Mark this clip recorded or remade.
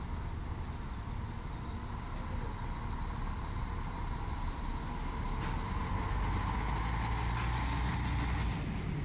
recorded